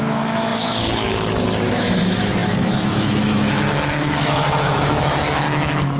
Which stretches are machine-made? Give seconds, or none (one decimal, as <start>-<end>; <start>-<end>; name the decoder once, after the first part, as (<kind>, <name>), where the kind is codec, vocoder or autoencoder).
0.0-6.0 (autoencoder, DAC-VAE)